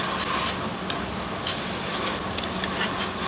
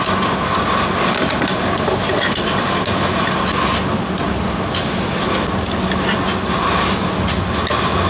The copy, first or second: first